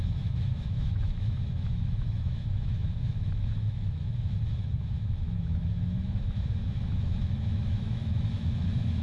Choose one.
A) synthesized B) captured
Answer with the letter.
A